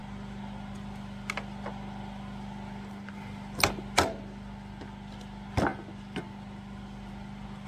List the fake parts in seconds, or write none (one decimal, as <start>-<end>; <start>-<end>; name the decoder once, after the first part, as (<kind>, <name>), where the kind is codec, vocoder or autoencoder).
none